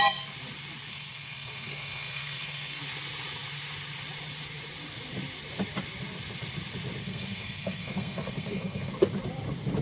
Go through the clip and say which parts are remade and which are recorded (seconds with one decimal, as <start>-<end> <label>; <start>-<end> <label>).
0.0-0.9 recorded; 0.9-2.8 remade; 2.8-7.0 recorded; 7.0-8.9 remade; 8.9-9.8 recorded